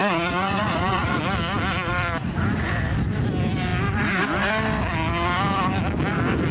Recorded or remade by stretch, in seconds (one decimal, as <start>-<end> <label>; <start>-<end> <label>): 0.0-1.2 remade; 1.2-6.5 recorded